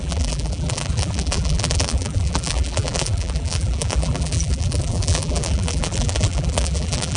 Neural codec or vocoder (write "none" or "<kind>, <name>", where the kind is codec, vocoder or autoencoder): vocoder, BigVGAN v2